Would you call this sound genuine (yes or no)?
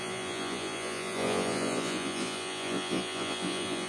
no